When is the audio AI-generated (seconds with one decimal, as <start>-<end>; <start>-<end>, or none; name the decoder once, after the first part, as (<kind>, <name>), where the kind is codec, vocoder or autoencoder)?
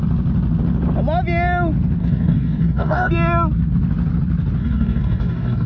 2.0-3.1 (codec, DAC); 4.6-5.7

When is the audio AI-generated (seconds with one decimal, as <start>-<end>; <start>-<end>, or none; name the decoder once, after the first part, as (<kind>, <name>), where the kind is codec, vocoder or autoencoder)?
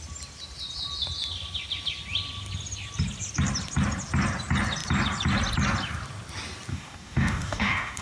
6.7-8.0 (codec, DAC)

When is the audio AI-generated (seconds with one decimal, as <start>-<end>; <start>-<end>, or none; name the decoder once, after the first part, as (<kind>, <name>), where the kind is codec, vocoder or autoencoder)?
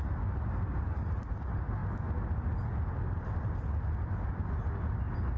none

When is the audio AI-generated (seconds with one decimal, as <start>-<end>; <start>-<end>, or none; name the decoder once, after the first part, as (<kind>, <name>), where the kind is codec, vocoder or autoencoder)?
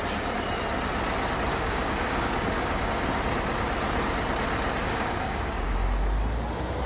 1.5-2.9 (codec, DAC); 4.8-5.7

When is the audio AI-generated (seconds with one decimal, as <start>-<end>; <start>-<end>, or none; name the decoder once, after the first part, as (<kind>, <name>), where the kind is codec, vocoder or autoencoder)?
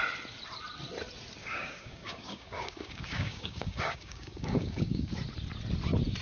1.4-5.1 (codec, DAC)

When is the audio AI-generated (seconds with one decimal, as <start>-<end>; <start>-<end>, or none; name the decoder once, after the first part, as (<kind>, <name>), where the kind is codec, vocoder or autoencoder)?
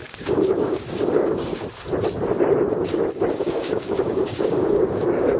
0.0-1.5 (codec, DAC); 3.3-5.4